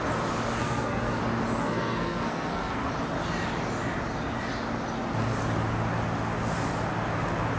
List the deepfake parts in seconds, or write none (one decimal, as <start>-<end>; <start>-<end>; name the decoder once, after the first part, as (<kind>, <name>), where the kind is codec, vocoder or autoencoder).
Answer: 0.6-1.2 (codec, SNAC); 1.6-2.9